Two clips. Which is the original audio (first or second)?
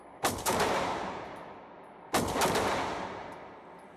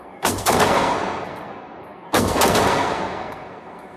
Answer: first